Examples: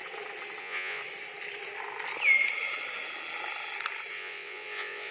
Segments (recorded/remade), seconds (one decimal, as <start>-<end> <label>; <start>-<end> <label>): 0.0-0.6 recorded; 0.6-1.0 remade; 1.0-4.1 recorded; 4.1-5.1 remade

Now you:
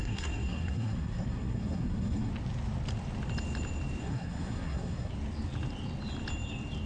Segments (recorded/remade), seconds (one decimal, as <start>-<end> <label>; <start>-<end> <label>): 0.0-2.3 remade; 2.3-4.0 recorded; 4.0-5.1 remade; 5.1-6.9 recorded

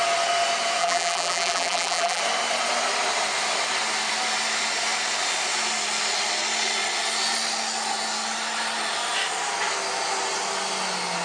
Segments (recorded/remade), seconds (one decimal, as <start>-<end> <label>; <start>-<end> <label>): 0.0-0.8 recorded; 0.8-2.2 remade; 2.2-11.2 recorded

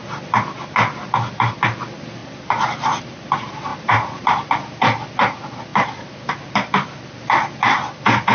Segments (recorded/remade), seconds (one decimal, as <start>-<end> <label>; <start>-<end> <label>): 0.0-2.2 recorded; 2.2-3.0 remade; 3.0-3.7 recorded; 3.7-4.5 remade; 4.5-5.7 recorded; 5.7-6.7 remade; 6.7-8.3 recorded

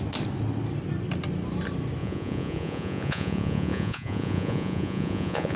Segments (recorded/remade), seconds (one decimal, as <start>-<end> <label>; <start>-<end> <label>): 0.0-2.0 recorded; 2.0-5.6 remade

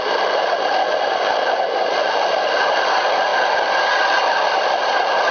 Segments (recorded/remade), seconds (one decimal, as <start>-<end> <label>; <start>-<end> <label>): 0.0-5.3 recorded